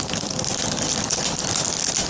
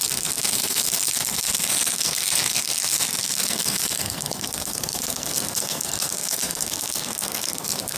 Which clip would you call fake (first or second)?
second